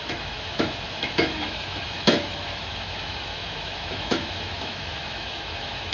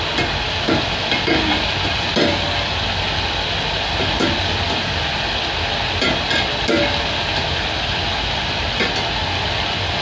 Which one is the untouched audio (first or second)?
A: second